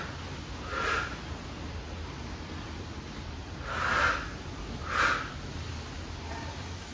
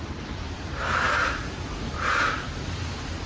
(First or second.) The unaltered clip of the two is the first